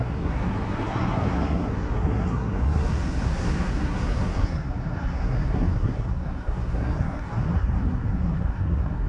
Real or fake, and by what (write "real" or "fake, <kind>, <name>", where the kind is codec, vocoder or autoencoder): fake, codec, SNAC